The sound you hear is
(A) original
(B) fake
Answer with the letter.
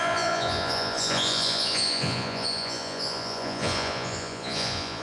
B